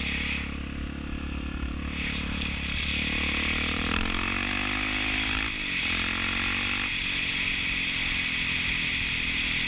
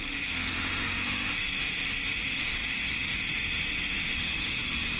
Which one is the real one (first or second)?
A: first